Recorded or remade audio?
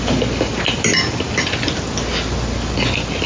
recorded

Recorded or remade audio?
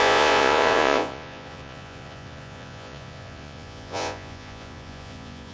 remade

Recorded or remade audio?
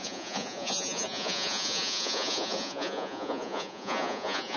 remade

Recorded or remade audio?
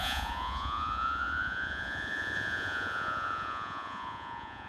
remade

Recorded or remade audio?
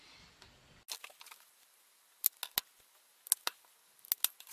recorded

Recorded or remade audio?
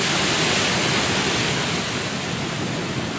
recorded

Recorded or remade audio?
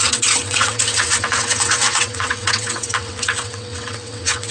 remade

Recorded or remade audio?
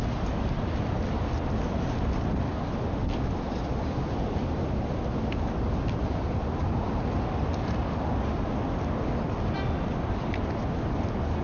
recorded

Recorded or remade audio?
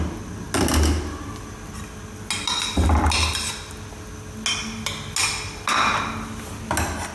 recorded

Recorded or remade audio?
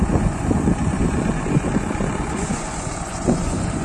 remade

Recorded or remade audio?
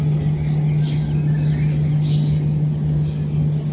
recorded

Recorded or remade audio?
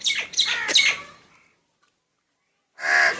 recorded